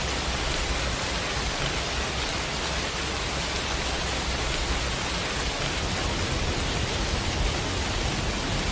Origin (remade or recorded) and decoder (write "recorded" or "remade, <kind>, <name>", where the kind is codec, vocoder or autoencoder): recorded